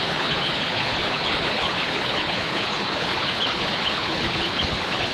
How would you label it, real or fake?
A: fake